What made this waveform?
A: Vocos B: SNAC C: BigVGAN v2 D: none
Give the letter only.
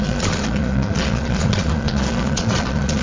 A